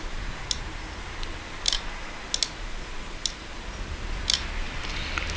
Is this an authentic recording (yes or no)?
yes